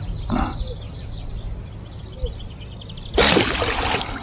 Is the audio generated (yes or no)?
no